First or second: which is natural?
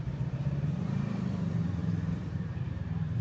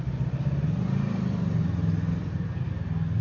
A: second